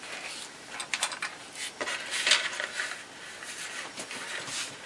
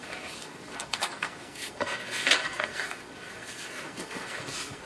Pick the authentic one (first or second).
first